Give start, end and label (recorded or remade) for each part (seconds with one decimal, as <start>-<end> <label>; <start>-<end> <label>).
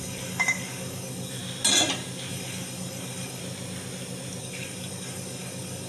0.0-1.4 remade; 1.4-2.3 recorded; 2.3-3.4 remade; 3.4-4.4 recorded; 4.4-5.9 remade